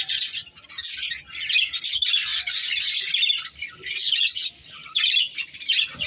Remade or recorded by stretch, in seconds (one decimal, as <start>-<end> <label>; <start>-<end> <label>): 0.0-6.1 recorded